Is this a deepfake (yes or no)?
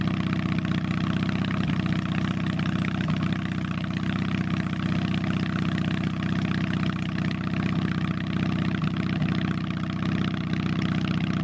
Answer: no